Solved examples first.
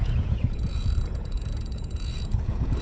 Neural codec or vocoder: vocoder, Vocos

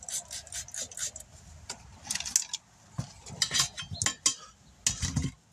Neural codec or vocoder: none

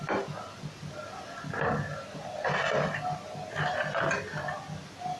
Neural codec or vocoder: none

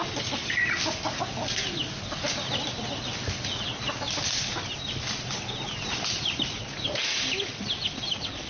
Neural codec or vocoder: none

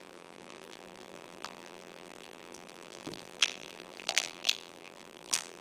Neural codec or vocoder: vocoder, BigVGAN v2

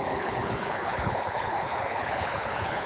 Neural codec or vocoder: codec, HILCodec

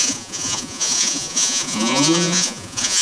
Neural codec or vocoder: vocoder, Vocos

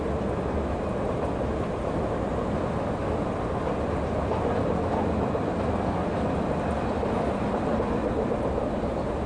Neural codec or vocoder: none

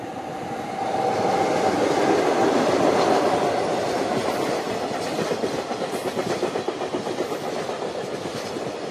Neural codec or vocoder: none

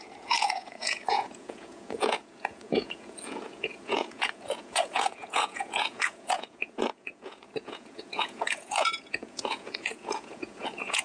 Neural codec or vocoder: vocoder, Vocos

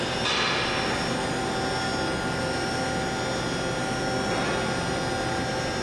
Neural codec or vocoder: none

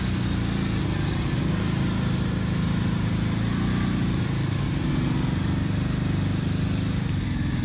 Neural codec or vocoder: none